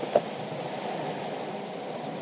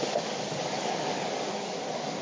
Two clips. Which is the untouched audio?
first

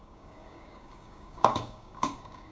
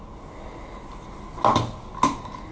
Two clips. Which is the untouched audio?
second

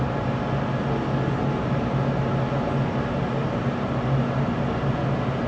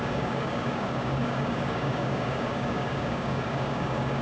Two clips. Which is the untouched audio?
first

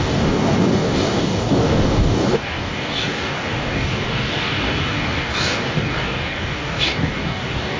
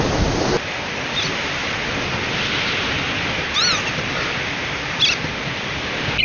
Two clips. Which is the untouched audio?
second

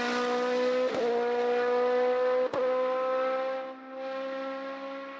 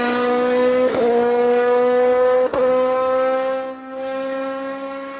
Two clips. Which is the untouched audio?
first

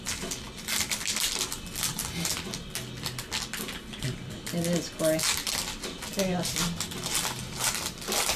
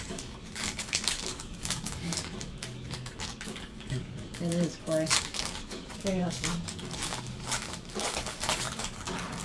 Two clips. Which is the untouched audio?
first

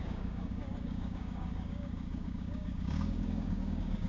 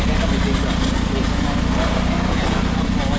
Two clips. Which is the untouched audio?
second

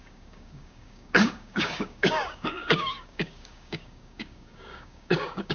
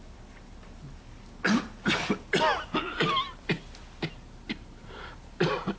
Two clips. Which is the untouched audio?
second